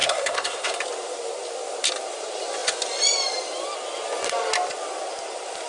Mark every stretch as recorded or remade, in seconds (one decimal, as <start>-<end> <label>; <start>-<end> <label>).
0.0-0.8 remade; 0.8-5.7 recorded